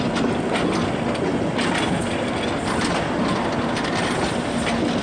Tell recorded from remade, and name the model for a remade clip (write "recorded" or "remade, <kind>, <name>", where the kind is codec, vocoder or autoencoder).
recorded